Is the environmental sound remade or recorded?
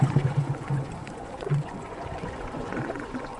remade